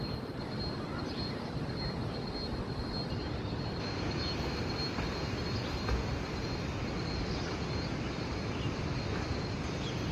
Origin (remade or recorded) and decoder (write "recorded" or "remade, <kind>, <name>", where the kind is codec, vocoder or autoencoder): recorded